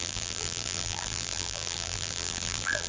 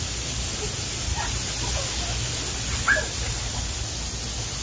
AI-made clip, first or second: first